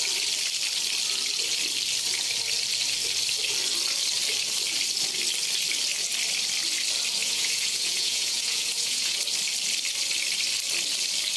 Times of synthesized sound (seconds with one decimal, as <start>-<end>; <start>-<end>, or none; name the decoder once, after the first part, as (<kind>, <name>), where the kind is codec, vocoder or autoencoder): 7.2-9.2 (vocoder, Vocos)